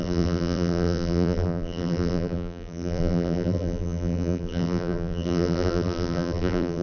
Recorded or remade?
remade